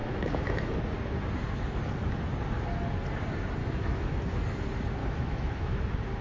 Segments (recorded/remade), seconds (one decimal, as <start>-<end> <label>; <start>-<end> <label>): 0.0-0.7 remade; 0.7-3.6 recorded; 3.6-4.2 remade; 4.2-5.0 recorded; 5.0-5.8 remade; 5.8-6.2 recorded